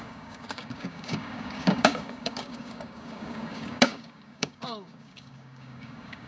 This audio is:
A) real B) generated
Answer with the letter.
B